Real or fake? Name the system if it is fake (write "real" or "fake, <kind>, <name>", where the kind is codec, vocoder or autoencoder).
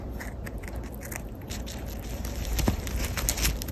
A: real